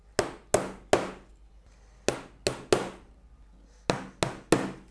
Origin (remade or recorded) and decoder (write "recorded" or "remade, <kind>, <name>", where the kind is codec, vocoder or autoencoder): recorded